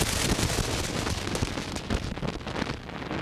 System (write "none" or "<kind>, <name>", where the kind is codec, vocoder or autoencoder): none